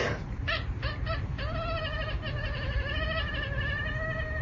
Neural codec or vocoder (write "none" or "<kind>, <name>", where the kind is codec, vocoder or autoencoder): none